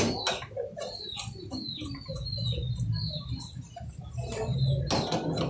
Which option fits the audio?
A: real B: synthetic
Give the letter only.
A